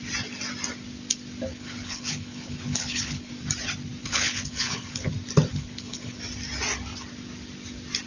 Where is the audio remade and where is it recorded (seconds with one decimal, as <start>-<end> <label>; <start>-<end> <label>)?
0.0-1.5 recorded; 1.5-3.3 remade; 3.3-4.0 recorded; 4.0-5.1 remade; 5.1-5.5 recorded; 5.5-6.2 remade; 6.2-8.1 recorded